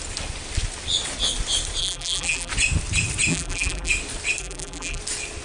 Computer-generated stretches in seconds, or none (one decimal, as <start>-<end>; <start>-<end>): 1.8-2.5; 3.3-3.9; 4.4-5.0